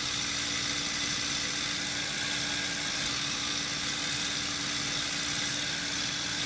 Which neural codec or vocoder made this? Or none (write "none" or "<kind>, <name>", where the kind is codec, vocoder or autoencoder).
none